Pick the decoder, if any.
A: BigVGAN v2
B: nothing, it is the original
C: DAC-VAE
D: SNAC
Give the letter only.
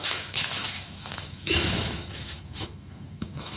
C